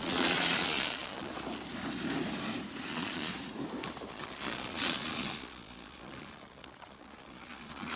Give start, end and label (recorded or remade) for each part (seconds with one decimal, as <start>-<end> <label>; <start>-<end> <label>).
0.0-1.3 remade; 1.3-2.9 recorded; 2.9-3.3 remade; 3.3-4.1 recorded; 4.1-8.0 remade